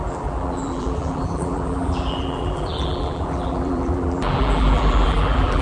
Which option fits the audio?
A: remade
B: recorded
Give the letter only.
A